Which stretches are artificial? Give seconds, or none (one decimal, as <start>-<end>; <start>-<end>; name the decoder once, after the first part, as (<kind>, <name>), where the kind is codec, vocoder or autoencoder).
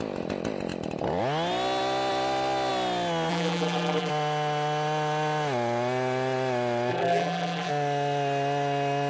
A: 3.3-4.1 (vocoder, BigVGAN v2); 6.9-7.7